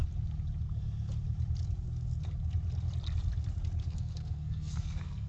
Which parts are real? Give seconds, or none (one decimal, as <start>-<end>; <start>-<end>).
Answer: 0.0-3.8